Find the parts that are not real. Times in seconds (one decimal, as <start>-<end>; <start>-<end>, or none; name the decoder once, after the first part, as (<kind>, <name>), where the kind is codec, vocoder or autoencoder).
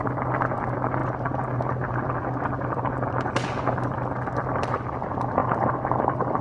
none